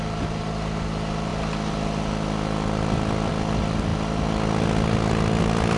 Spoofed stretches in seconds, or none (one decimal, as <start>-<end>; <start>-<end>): none